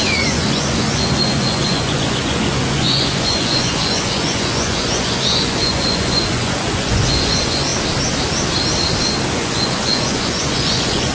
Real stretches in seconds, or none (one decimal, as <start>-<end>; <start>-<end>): 7.7-9.3